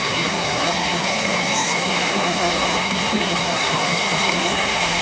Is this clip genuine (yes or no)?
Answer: no